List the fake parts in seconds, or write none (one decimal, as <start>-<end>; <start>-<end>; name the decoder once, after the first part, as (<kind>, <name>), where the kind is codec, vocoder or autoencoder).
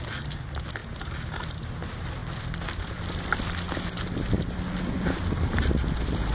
none